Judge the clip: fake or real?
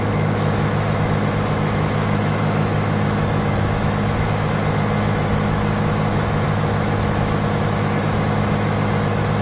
fake